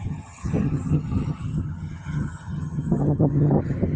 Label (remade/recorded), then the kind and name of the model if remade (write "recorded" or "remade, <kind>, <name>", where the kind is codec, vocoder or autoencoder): remade, vocoder, HiFi-GAN